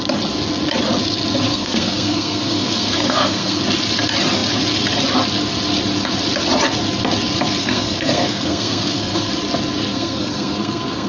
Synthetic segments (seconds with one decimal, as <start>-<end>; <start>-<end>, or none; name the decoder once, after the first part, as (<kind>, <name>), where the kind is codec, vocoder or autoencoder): 1.5-3.6 (codec, SNAC); 7.6-9.3; 9.9-11.1